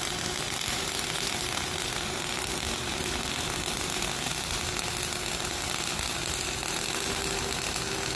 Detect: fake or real real